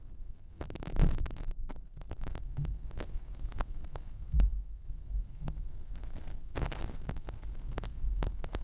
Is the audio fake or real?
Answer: fake